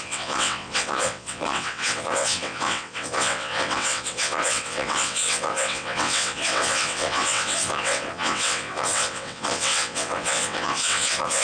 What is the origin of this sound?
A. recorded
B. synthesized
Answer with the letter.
B